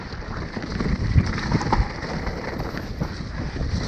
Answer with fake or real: real